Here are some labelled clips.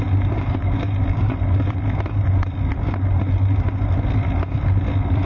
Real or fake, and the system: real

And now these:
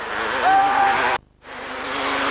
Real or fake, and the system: real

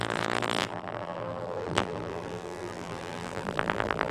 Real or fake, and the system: fake, vocoder, BigVGAN v2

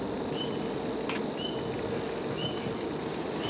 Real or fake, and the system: real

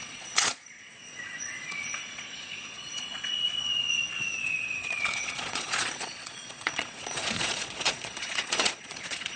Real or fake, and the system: fake, vocoder, Vocos